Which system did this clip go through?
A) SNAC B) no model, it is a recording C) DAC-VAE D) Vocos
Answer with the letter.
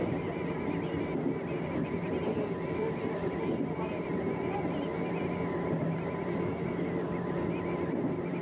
B